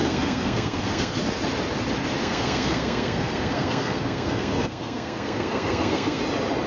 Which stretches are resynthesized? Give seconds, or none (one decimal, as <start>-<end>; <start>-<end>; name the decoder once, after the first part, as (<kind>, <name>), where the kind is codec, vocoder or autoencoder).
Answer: 0.0-1.2 (codec, SNAC); 2.2-6.2

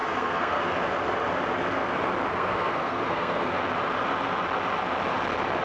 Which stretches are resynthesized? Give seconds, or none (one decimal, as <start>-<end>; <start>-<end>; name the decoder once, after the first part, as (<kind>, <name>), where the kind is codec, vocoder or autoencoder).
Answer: 0.0-0.6 (codec, SNAC); 2.3-3.5

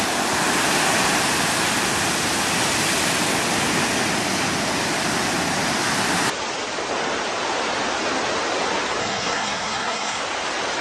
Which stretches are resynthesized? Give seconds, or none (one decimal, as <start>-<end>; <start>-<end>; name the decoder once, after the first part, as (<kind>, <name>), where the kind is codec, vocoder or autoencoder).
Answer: 9.0-10.2 (codec, SNAC)